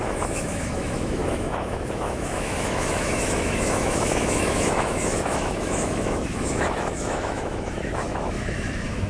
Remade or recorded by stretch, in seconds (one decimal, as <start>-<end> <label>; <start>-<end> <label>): 0.0-9.1 remade